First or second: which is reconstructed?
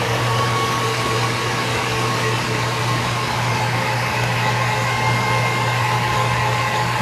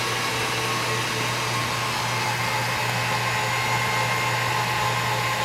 first